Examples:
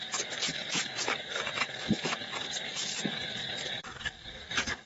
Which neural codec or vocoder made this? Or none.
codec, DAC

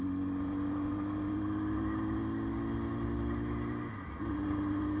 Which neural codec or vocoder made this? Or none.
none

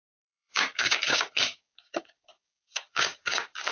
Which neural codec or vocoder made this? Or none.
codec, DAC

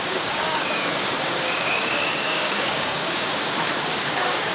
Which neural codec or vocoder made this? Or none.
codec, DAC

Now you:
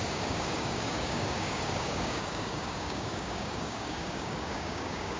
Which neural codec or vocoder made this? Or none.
codec, DAC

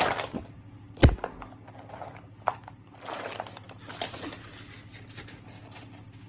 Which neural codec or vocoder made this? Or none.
none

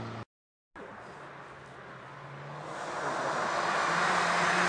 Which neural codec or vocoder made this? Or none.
none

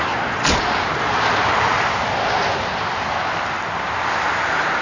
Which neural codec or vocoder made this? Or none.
none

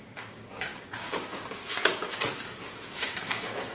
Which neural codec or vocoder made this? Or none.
codec, DAC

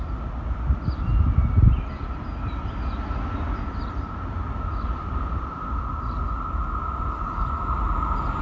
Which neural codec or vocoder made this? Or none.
none